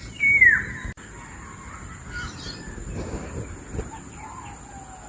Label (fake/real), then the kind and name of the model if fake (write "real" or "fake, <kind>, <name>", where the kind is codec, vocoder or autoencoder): real